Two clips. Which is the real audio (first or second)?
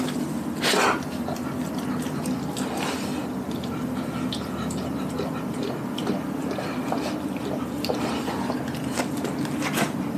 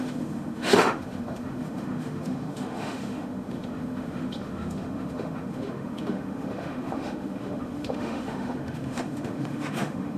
first